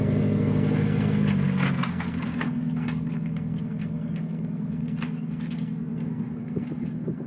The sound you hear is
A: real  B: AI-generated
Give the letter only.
B